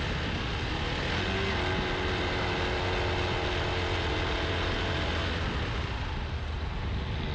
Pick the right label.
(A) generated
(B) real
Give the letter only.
B